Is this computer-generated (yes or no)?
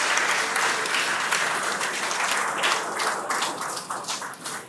no